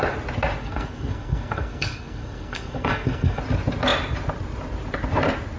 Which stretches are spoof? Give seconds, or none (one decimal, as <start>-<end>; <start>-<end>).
0.6-3.4